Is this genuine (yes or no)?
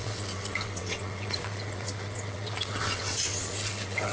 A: no